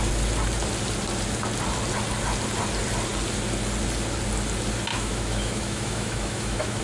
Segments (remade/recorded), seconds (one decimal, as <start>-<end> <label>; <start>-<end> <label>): 0.0-4.9 recorded; 4.9-6.8 remade